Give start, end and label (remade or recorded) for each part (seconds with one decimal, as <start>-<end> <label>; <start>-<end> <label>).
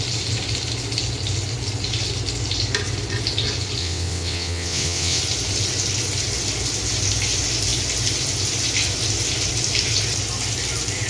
0.0-3.8 recorded; 3.8-5.2 remade; 5.2-11.1 recorded